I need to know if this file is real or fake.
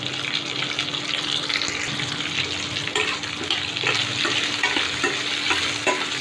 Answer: real